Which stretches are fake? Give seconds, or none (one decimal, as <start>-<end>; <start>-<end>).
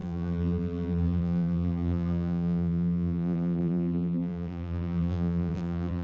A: 0.0-6.0